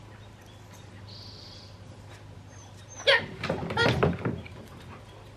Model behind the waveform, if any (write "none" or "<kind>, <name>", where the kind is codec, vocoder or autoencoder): none